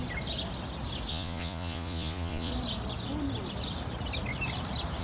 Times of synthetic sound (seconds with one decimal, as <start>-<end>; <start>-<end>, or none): 1.1-2.5